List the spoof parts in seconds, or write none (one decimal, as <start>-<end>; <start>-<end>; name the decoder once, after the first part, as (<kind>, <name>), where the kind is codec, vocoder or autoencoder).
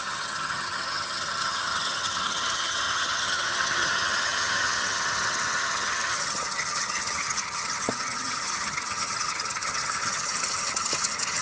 0.0-11.4 (vocoder, HiFi-GAN)